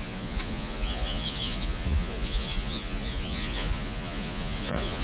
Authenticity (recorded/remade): remade